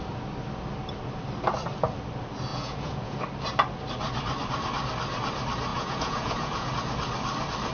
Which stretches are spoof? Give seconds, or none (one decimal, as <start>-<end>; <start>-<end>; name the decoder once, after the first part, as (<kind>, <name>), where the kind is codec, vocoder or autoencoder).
2.5-3.2 (vocoder, Vocos); 5.7-6.7